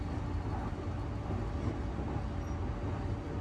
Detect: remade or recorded recorded